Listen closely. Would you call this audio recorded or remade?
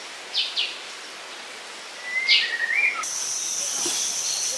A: recorded